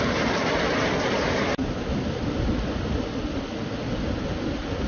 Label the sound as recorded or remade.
recorded